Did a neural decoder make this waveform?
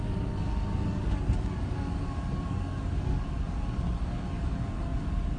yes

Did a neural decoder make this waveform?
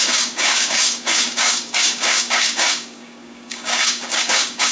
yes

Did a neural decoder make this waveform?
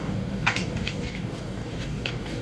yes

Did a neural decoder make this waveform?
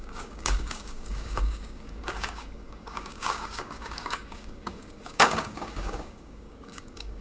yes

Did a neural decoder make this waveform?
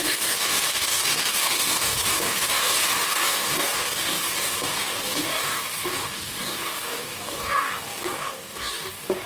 yes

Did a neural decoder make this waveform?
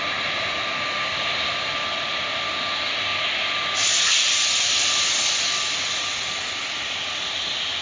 no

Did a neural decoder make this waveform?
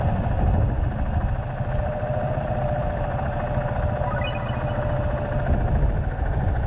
no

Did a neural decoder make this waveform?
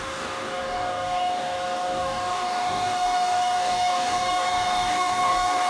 yes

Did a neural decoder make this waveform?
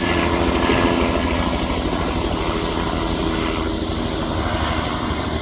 no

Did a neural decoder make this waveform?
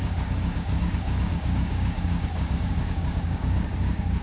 yes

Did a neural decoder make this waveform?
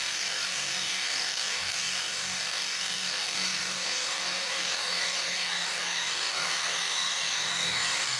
yes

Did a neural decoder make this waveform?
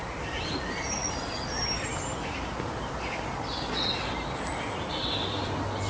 no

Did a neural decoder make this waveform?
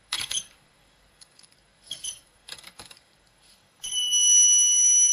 yes